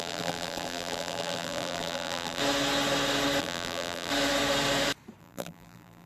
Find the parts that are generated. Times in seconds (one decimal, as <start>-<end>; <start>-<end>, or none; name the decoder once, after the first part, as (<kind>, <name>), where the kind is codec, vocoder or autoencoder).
0.0-2.4 (vocoder, BigVGAN v2); 3.4-4.1; 5.2-6.1